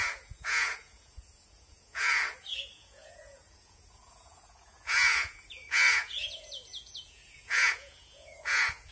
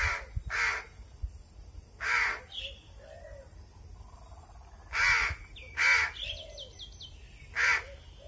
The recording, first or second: second